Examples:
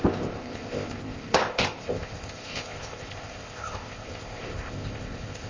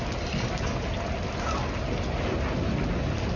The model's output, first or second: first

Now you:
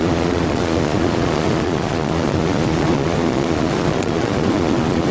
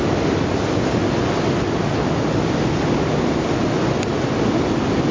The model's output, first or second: first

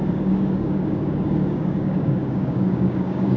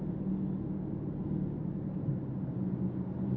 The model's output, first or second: first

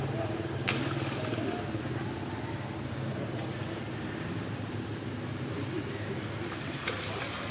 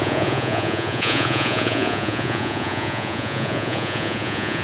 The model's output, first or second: second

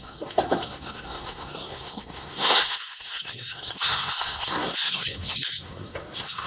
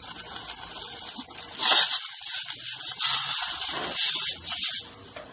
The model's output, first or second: first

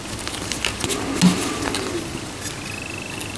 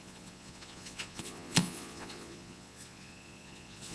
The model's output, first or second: second